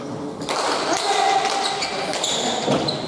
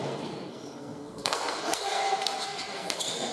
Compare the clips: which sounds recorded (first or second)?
first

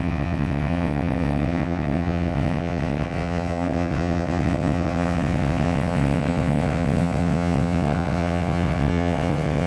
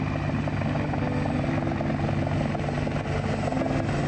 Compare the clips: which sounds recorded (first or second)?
second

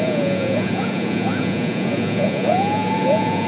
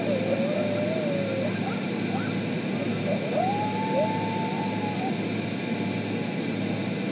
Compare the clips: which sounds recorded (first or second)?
second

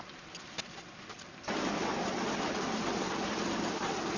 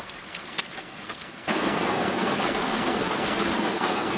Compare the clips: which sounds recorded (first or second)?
first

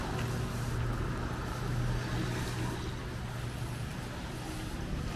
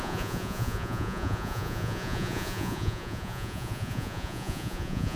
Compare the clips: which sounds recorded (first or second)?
first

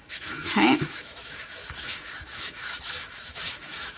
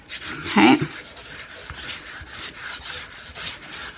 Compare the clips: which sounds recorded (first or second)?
second